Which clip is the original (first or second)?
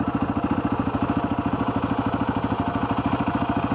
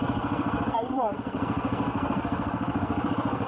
first